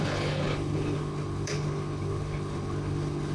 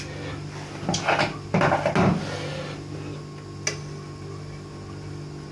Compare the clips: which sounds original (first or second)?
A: second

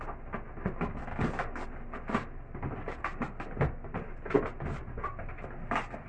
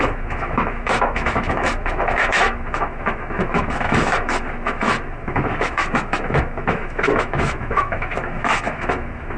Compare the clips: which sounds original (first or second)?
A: first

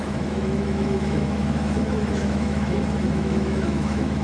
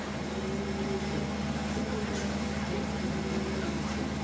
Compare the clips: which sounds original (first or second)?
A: second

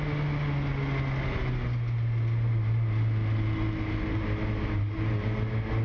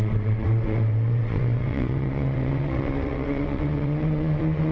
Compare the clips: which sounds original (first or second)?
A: first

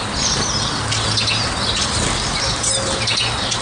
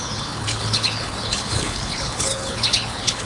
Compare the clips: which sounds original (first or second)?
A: first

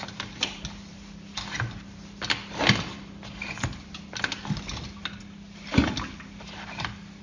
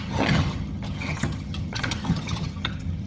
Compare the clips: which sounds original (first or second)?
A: first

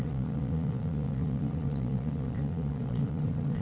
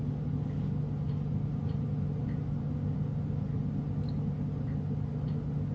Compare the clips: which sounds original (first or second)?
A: second